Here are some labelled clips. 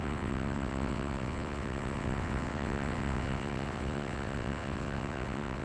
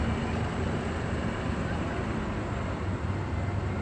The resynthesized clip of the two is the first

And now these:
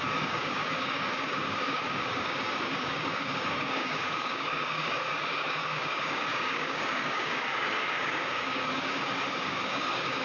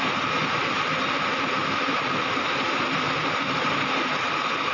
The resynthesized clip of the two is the first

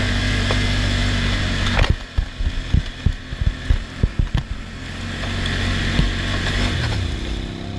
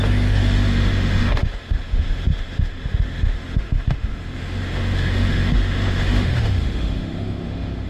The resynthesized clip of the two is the second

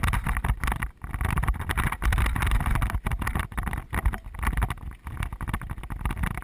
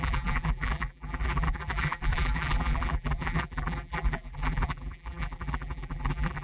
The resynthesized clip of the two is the second